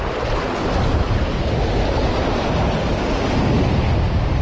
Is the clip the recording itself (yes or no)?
yes